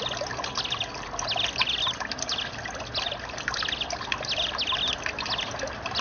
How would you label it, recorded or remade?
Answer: recorded